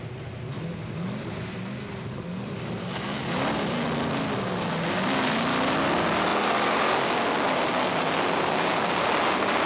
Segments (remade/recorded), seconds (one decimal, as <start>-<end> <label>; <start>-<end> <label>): 0.0-9.7 recorded